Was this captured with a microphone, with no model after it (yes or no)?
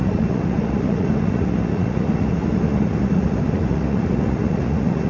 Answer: no